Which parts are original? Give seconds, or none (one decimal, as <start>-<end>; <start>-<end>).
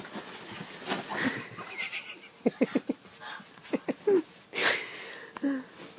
0.0-6.0